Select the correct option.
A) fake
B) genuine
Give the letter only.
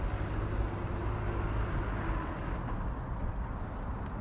B